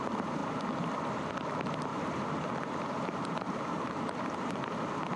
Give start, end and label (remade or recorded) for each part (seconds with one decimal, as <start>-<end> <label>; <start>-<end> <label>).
0.0-1.9 recorded; 1.9-5.2 remade